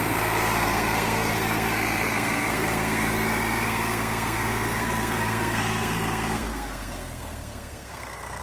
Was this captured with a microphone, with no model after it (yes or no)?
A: no